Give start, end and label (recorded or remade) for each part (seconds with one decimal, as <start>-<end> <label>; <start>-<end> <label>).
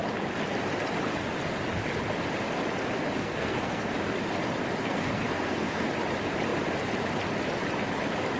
0.0-3.2 recorded; 3.2-3.9 remade; 3.9-4.8 recorded; 4.8-5.9 remade; 5.9-8.4 recorded